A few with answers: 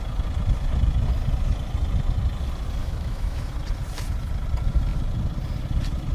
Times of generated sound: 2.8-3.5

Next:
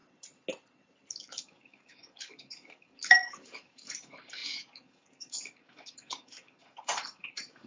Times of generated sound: 1.1-7.7

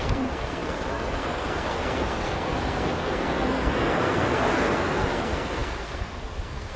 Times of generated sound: 0.0-6.8

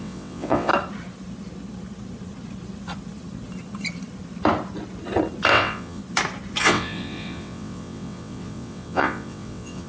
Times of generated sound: 0.0-0.7; 5.5-6.0; 6.6-9.9

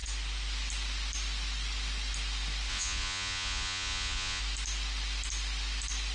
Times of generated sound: 2.7-4.4

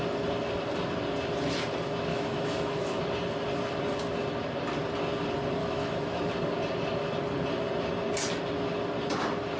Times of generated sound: 2.1-3.0; 5.6-6.3

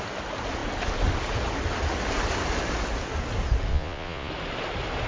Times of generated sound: 3.7-4.3